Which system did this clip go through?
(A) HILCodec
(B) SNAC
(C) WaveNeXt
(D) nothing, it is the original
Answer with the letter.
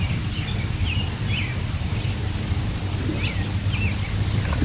D